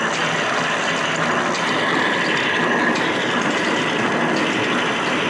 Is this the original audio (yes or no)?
yes